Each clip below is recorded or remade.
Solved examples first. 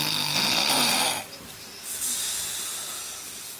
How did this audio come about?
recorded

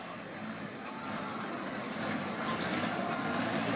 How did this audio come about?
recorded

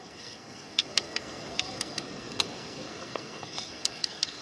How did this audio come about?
remade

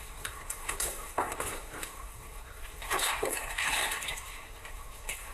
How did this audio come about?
remade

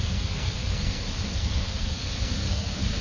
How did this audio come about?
remade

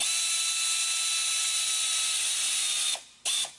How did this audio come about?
recorded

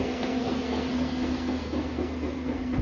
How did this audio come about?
remade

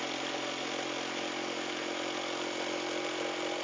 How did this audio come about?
recorded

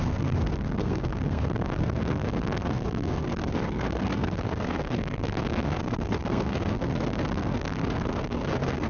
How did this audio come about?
remade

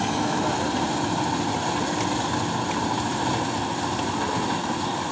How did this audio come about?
recorded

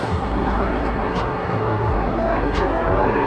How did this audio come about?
remade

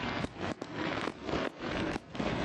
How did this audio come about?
remade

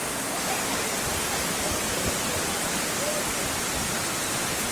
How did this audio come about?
recorded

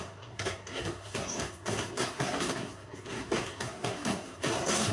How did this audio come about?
remade